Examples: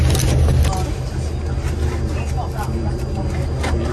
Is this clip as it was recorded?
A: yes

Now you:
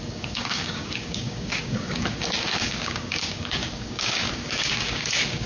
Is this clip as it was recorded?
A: no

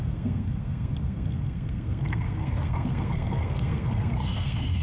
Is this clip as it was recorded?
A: no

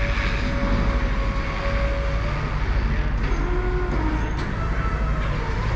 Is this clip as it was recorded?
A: yes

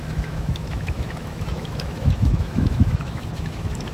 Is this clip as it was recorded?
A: no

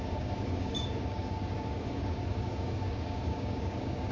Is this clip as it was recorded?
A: no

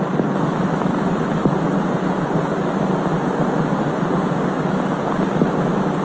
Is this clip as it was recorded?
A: yes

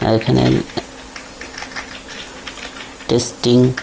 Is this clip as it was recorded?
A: yes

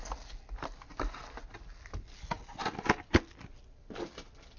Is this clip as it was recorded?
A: yes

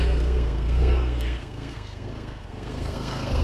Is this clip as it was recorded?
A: no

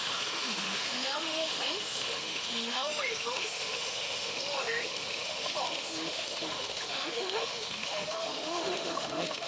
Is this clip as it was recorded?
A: no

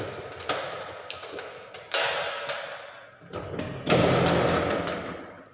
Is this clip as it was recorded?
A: yes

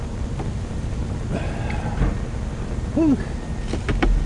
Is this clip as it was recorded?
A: yes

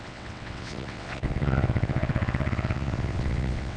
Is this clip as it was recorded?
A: no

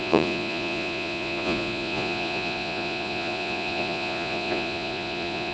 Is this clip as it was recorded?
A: no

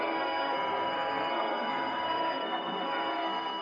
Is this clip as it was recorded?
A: no